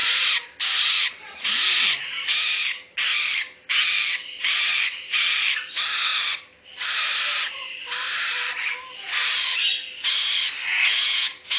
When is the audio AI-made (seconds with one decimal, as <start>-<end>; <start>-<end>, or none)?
10.7-11.6